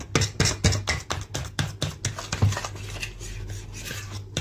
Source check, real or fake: real